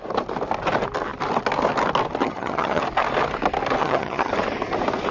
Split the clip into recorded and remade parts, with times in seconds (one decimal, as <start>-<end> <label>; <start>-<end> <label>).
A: 0.0-2.2 recorded; 2.2-2.8 remade; 2.8-3.8 recorded; 3.8-4.3 remade; 4.3-5.1 recorded